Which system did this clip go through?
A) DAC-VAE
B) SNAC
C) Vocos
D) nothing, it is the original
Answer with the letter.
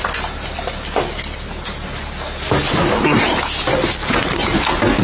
D